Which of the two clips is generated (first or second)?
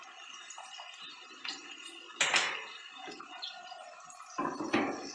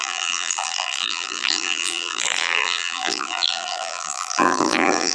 second